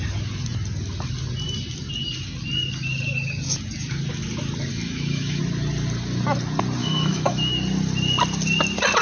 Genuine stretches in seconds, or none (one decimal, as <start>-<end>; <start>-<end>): 0.0-4.7; 5.4-6.8; 7.5-9.0